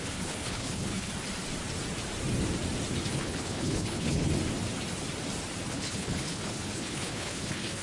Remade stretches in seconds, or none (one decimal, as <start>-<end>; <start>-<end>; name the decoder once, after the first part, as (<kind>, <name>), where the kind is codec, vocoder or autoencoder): 0.0-1.1 (codec, HILCodec); 3.1-4.3; 5.7-7.8